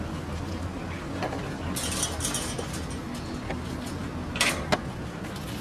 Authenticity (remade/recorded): recorded